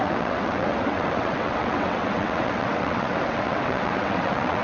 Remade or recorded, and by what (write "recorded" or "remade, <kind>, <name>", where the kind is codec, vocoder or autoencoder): remade, vocoder, WaveNeXt